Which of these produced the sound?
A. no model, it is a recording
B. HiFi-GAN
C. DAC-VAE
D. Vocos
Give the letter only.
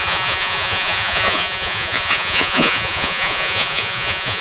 D